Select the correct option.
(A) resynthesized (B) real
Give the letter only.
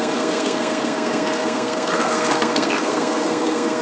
A